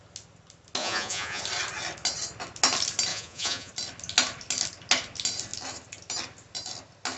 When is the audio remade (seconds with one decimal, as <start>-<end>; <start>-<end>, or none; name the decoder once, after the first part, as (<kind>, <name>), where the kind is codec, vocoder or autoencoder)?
0.8-1.4 (vocoder, Vocos); 3.1-3.7